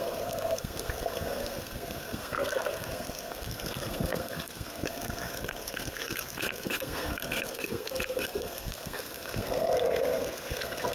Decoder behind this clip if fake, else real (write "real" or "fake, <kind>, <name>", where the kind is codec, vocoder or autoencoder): fake, codec, SNAC